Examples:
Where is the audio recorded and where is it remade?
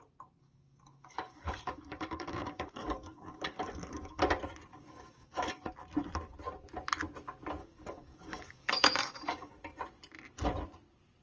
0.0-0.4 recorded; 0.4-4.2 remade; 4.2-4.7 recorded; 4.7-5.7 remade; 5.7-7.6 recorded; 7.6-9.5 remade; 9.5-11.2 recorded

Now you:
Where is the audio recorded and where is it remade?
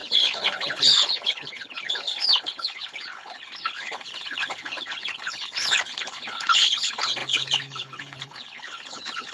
0.0-9.3 remade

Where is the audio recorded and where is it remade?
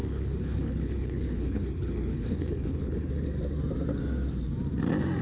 0.0-3.1 remade; 3.1-5.2 recorded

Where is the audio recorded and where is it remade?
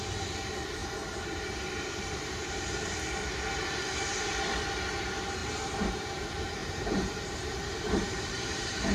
0.0-6.6 recorded; 6.6-8.9 remade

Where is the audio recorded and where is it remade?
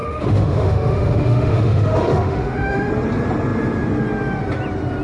0.0-2.9 remade; 2.9-5.0 recorded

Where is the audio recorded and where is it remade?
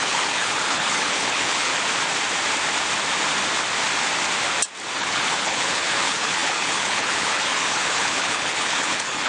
0.0-1.7 remade; 1.7-5.0 recorded; 5.0-9.3 remade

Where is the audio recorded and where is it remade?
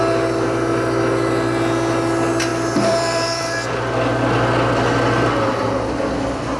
0.0-2.5 recorded; 2.5-3.4 remade; 3.4-6.6 recorded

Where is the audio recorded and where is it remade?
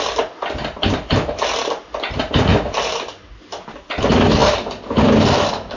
0.0-5.8 recorded